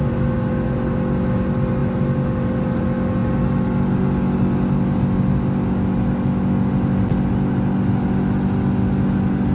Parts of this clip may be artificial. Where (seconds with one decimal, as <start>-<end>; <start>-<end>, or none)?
none